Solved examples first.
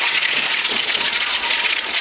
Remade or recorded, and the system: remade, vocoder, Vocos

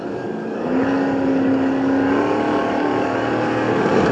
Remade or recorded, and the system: remade, codec, DAC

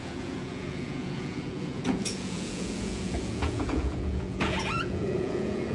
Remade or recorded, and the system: remade, vocoder, Vocos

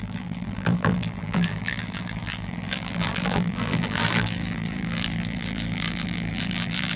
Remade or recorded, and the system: remade, vocoder, BigVGAN v2